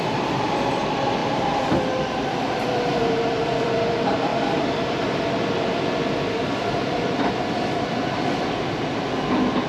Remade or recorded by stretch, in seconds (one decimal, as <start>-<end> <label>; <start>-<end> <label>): 0.0-9.7 remade